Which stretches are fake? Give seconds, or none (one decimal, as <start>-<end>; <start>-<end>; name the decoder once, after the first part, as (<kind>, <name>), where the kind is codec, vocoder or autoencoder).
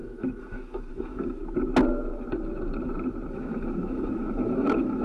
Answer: 0.0-1.4 (autoencoder, DAC-VAE); 3.3-5.0